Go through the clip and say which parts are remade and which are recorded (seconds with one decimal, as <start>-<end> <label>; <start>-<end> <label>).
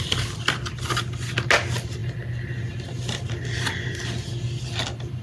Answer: 0.0-5.2 recorded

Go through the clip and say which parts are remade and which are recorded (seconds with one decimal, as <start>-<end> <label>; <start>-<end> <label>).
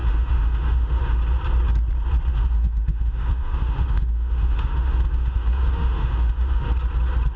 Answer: 0.0-1.2 remade; 1.2-2.3 recorded; 2.3-6.7 remade; 6.7-7.4 recorded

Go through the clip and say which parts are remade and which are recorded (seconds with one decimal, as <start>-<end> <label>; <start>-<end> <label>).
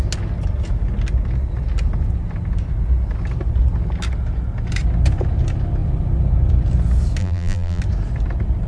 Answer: 0.0-7.2 recorded; 7.2-7.8 remade; 7.8-8.7 recorded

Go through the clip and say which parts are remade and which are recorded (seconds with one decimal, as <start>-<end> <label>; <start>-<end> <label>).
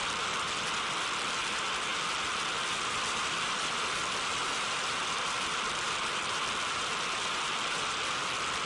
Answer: 0.0-8.6 recorded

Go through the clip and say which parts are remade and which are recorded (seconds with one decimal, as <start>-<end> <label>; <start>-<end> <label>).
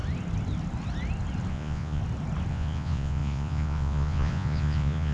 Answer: 0.0-1.5 recorded; 1.5-2.0 remade; 2.0-2.5 recorded; 2.5-5.1 remade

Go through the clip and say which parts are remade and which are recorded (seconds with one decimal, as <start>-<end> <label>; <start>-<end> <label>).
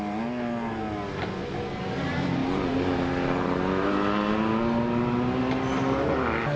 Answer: 0.0-6.6 recorded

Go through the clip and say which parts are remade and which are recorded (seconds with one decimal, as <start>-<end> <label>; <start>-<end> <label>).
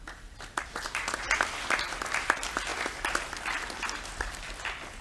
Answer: 0.0-5.0 remade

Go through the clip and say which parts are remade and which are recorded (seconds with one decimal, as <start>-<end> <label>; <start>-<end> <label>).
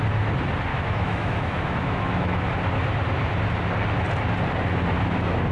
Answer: 0.0-0.7 recorded; 0.7-2.5 remade; 2.5-5.5 recorded